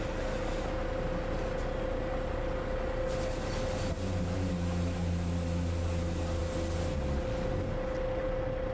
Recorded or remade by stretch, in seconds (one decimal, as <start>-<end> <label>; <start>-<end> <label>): 0.0-8.7 recorded